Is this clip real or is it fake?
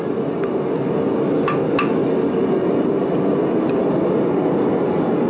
real